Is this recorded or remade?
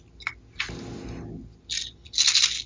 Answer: recorded